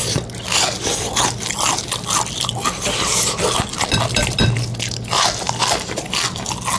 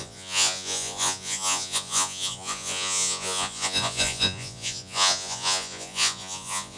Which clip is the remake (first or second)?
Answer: second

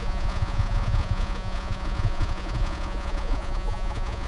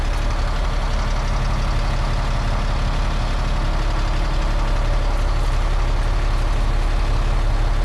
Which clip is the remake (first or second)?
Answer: first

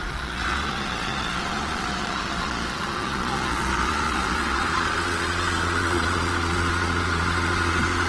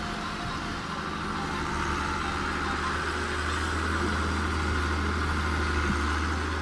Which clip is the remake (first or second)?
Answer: first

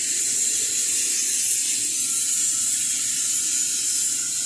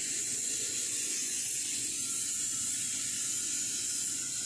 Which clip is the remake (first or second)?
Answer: second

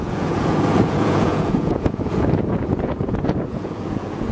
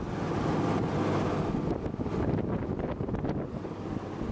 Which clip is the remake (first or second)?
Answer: first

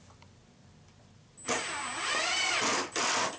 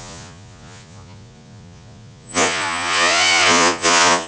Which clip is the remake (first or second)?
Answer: second